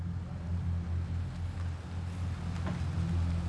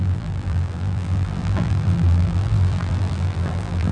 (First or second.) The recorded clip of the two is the first